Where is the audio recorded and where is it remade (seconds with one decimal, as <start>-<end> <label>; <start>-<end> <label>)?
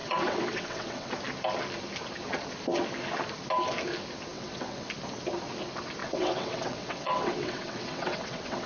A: 0.0-1.1 remade; 1.1-4.3 recorded; 4.3-4.9 remade; 4.9-6.0 recorded; 6.0-8.7 remade